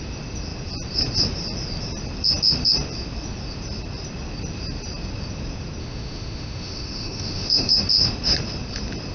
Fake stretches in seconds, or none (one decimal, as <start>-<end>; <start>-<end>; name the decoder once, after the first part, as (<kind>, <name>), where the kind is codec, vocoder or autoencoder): 5.8-7.8 (autoencoder, DAC-VAE)